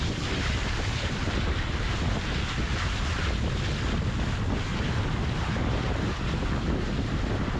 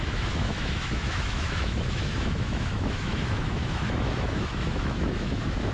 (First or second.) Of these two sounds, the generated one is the second